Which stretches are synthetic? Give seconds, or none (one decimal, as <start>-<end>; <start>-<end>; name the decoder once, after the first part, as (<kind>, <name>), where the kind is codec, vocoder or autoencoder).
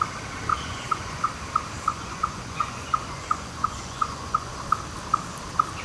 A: 0.5-1.3 (vocoder, Vocos); 1.9-4.5